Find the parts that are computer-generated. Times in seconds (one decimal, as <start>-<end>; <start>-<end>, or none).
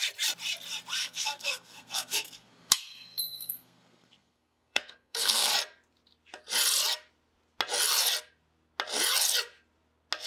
1.0-5.5